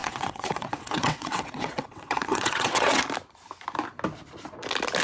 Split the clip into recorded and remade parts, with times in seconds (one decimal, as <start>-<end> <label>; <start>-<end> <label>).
0.0-3.0 remade; 3.0-5.0 recorded